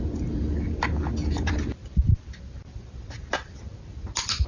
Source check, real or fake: real